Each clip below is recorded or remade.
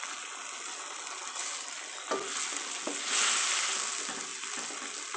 recorded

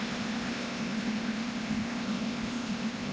remade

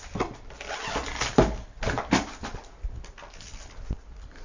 recorded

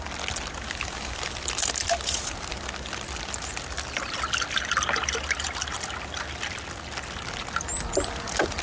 recorded